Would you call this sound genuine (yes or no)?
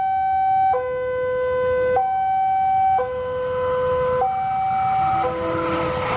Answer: yes